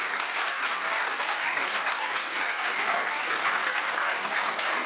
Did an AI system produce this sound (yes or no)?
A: yes